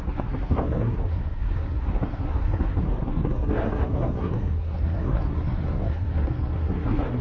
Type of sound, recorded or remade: remade